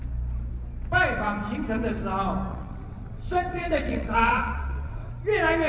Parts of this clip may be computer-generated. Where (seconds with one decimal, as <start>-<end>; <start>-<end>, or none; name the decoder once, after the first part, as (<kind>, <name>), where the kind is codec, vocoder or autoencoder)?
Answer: 2.5-5.1 (vocoder, WaveNeXt)